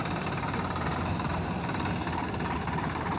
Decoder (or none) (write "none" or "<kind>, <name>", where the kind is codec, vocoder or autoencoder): vocoder, BigVGAN v2